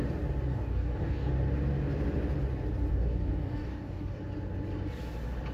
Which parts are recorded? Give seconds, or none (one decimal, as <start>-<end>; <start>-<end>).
0.0-0.5; 1.3-2.9; 4.2-5.5